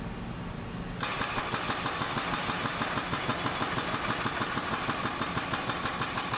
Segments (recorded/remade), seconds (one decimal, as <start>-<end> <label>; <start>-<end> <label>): 0.0-6.4 recorded